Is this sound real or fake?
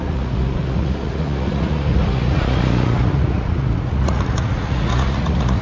fake